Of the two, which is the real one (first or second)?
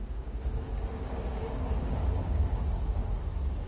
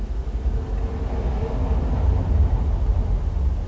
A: second